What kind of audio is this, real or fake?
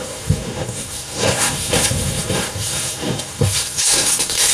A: fake